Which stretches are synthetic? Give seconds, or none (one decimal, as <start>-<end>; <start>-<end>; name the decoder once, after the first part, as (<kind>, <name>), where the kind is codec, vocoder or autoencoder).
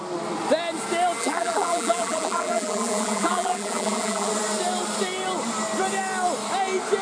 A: 1.2-4.3 (vocoder, BigVGAN v2)